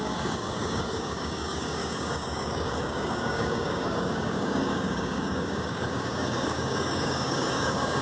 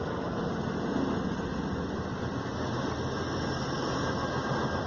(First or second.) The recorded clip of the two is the second